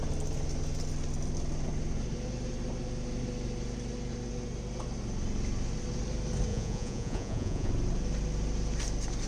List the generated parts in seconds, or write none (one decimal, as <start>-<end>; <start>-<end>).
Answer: 6.5-7.7